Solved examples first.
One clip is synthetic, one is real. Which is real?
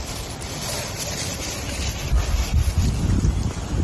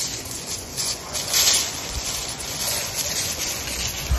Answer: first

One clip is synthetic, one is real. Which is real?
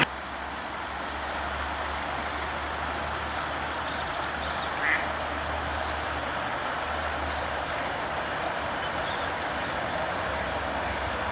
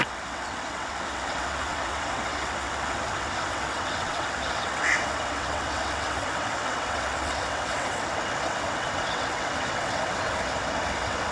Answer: first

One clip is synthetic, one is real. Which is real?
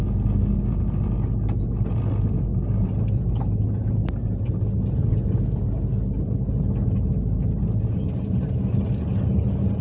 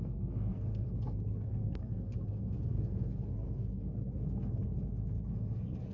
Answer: first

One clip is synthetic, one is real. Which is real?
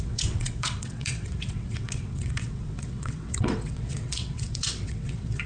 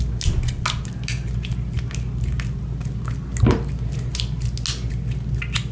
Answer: second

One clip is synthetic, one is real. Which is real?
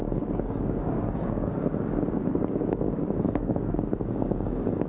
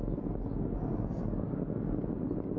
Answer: second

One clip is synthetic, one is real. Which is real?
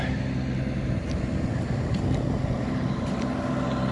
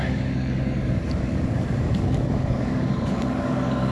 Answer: first